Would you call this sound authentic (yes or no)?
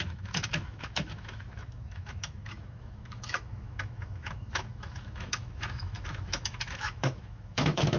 no